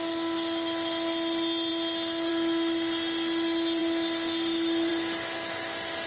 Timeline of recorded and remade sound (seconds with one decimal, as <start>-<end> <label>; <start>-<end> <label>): 0.0-6.1 recorded